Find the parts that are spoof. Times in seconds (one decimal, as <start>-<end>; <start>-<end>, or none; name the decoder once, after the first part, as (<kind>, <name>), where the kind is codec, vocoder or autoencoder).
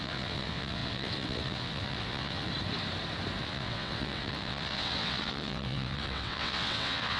0.0-2.5 (vocoder, WaveNeXt); 3.4-7.2